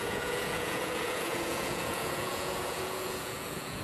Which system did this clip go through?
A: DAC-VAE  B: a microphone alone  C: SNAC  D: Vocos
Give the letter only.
D